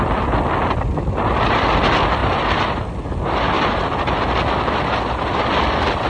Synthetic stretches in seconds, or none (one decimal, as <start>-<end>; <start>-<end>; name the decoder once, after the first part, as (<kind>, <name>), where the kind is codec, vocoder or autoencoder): none